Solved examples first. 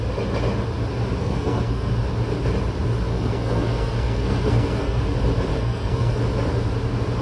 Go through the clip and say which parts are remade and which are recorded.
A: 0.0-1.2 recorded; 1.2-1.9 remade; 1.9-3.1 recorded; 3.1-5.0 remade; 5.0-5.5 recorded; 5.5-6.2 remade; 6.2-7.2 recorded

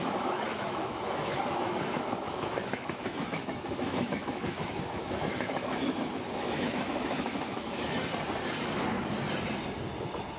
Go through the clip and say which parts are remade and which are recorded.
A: 0.0-8.0 remade; 8.0-10.4 recorded

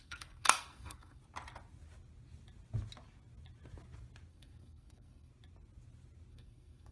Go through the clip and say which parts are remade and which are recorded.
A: 0.0-1.2 remade; 1.2-4.3 recorded; 4.3-5.3 remade; 5.3-6.3 recorded; 6.3-6.9 remade

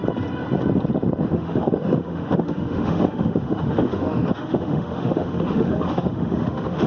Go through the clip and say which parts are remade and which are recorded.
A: 0.0-1.2 recorded; 1.2-6.9 remade

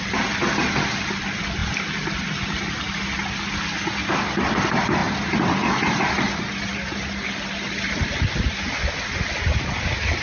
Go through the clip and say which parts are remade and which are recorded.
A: 0.0-10.2 recorded

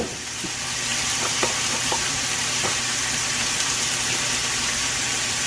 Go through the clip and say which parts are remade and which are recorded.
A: 0.0-0.9 recorded; 0.9-3.9 remade; 3.9-4.4 recorded; 4.4-5.5 remade

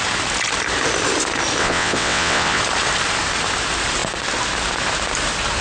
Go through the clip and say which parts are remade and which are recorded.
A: 0.0-1.6 recorded; 1.6-2.6 remade; 2.6-5.6 recorded